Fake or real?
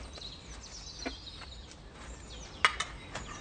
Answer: real